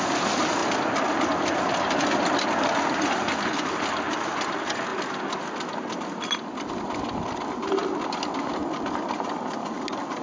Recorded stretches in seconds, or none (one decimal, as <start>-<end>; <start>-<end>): 0.0-10.2